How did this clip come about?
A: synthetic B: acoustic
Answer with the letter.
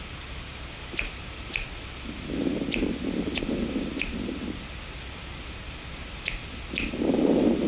B